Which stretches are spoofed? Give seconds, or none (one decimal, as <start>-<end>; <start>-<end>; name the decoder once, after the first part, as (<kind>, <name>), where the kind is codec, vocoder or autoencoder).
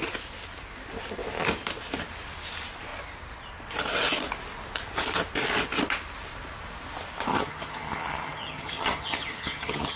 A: 7.3-10.0 (vocoder, HiFi-GAN)